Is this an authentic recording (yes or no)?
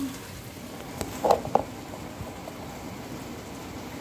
yes